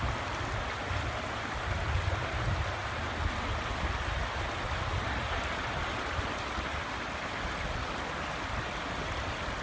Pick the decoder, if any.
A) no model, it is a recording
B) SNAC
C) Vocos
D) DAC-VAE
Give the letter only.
A